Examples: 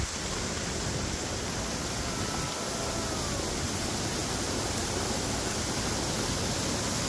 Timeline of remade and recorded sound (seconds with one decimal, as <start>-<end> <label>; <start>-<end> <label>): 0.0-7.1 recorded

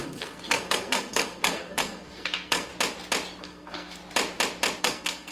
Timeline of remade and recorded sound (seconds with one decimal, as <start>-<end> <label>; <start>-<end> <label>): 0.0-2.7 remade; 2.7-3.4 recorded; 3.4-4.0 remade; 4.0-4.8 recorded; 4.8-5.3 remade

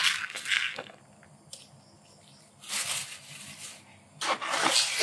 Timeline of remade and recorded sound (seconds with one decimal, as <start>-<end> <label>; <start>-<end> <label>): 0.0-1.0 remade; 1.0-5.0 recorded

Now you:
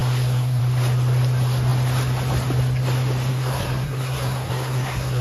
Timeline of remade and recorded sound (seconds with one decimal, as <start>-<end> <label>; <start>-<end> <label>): 0.0-0.6 remade; 0.6-3.3 recorded; 3.3-5.2 remade